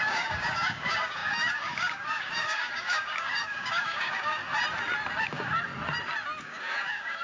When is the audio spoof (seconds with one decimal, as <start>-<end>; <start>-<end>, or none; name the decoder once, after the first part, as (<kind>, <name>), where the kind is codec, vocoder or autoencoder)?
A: 0.0-4.4 (codec, DAC); 5.2-5.7; 6.4-7.2